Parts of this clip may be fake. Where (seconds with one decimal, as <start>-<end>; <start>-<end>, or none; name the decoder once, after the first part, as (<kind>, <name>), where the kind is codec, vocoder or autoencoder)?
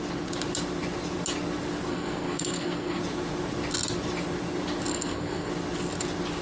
1.9-3.0 (codec, SNAC); 4.9-5.5